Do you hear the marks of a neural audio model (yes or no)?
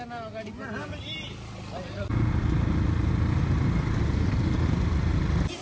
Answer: no